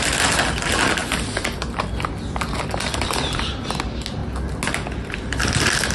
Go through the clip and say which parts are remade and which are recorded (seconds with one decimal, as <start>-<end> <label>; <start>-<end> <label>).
0.0-2.9 recorded; 2.9-3.5 remade; 3.5-5.9 recorded